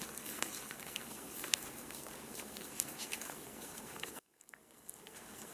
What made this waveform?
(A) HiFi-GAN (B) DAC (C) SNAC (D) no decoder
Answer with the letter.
C